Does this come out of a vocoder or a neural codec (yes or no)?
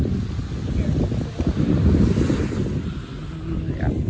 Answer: no